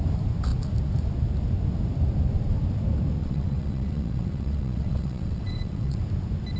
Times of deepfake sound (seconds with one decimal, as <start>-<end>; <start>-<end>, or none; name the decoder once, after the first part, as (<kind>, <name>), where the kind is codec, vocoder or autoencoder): 3.2-6.0 (vocoder, WaveNeXt)